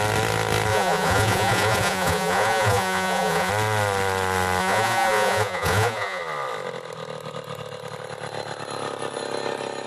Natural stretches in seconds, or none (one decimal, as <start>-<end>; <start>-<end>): 0.0-0.7; 3.5-4.6; 6.2-9.9